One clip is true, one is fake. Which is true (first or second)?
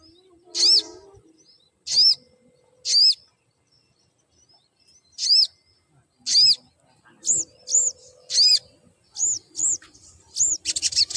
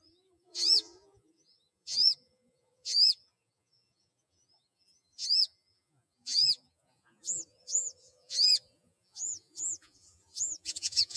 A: first